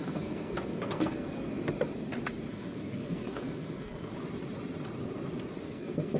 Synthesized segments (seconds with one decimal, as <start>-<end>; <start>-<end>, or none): 0.0-1.5; 2.5-4.1; 5.6-6.2